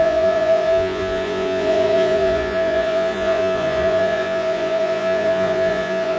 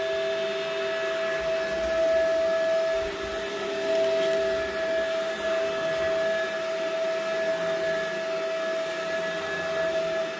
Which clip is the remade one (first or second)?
first